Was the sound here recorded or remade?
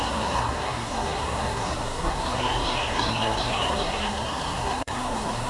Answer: remade